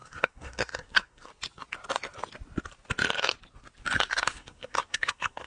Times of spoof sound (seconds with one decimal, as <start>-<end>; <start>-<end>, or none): 0.0-1.3; 4.1-5.5